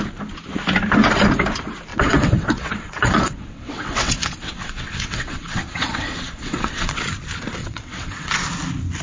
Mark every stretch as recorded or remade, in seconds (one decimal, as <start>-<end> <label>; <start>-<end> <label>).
0.0-1.9 recorded; 1.9-7.0 remade; 7.0-7.6 recorded; 7.6-8.3 remade; 8.3-9.0 recorded